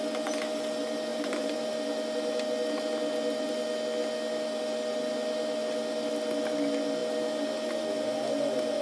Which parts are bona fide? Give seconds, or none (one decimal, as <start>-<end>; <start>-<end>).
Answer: 0.0-1.1; 1.7-8.8